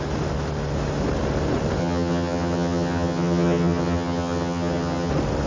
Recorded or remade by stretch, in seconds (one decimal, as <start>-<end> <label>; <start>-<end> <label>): 0.0-1.8 recorded; 1.8-5.1 remade; 5.1-5.5 recorded